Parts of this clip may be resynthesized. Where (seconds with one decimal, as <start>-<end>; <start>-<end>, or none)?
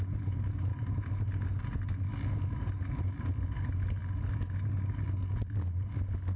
none